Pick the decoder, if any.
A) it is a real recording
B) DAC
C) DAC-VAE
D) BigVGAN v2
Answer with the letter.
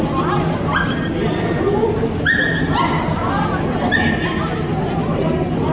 A